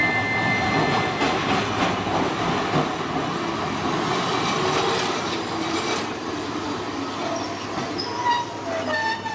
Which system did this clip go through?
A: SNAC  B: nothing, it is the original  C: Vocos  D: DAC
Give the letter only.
B